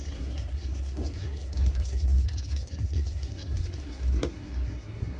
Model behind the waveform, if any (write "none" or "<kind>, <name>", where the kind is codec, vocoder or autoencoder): codec, SNAC